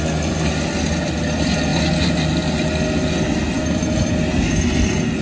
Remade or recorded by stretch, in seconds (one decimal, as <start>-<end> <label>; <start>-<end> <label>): 0.0-5.2 recorded